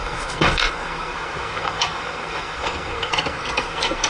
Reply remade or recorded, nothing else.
remade